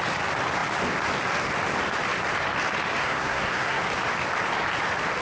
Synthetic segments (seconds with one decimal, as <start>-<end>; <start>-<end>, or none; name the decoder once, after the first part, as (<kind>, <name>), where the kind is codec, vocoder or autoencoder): 3.0-3.8 (codec, SNAC)